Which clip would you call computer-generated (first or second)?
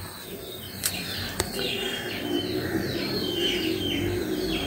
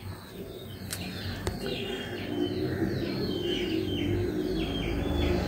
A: first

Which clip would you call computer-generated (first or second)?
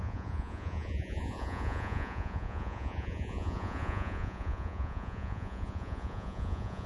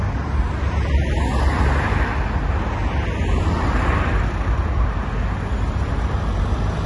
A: first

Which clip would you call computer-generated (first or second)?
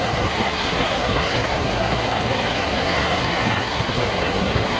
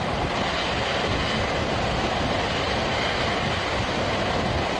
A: first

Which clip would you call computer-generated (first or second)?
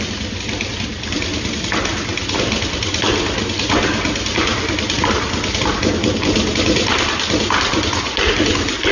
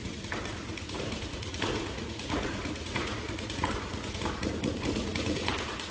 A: second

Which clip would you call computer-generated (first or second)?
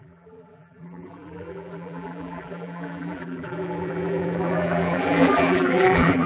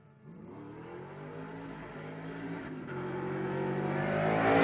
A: first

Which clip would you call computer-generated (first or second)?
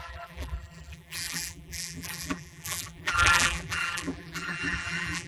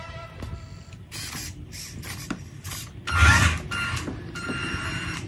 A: first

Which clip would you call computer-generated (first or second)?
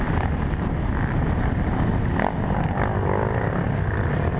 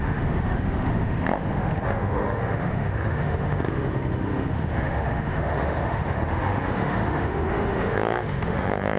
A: second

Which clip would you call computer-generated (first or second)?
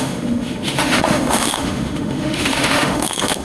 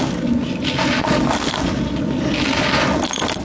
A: first